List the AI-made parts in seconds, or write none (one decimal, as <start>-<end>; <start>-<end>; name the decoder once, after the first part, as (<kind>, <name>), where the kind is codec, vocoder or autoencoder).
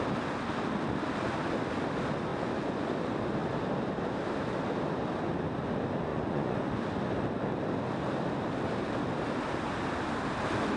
2.3-2.9 (vocoder, Vocos); 6.1-6.8